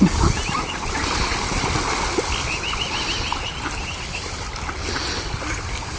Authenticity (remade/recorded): recorded